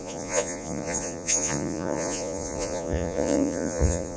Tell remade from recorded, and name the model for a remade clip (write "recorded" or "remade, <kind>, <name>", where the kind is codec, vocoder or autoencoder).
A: remade, vocoder, Vocos